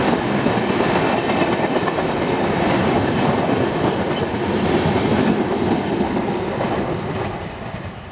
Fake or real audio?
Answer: fake